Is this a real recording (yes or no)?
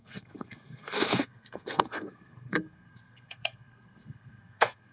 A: no